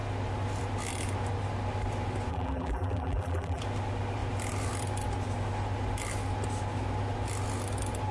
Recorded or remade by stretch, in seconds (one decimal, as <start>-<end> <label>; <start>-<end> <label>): 0.0-2.3 recorded; 2.3-3.6 remade; 3.6-8.1 recorded

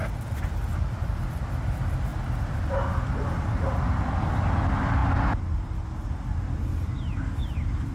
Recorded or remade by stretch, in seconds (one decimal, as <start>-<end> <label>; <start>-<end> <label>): 0.0-7.9 recorded

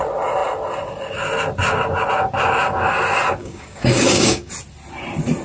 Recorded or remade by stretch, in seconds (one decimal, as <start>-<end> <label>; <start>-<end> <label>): 0.0-3.4 recorded; 3.4-4.5 remade; 4.5-5.4 recorded

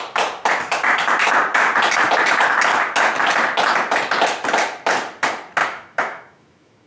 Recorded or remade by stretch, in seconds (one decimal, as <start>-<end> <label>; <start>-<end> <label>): 0.0-5.6 recorded; 5.6-6.9 remade

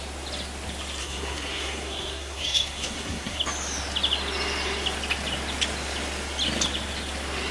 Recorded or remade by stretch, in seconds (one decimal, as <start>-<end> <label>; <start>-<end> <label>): 0.0-1.0 recorded; 1.0-3.4 remade; 3.4-7.5 recorded

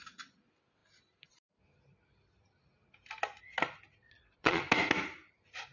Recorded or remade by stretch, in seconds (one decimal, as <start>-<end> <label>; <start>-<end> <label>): 0.0-4.0 recorded; 4.0-4.6 remade; 4.6-5.7 recorded

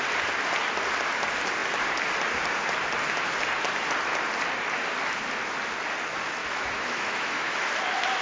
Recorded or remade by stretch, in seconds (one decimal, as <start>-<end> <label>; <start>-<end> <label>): 0.0-6.4 recorded; 6.4-7.7 remade; 7.7-8.2 recorded

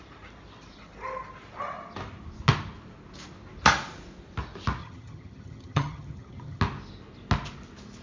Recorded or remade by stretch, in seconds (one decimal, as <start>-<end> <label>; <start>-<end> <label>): 0.0-4.8 recorded; 4.8-6.6 remade; 6.6-8.0 recorded